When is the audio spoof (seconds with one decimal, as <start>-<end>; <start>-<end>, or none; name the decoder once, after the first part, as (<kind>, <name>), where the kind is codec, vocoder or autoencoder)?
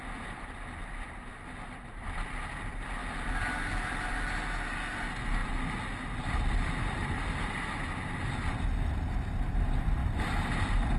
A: none